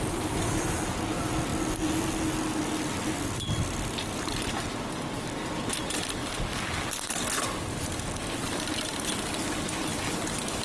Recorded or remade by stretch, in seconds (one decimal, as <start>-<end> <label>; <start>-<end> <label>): 0.0-10.6 recorded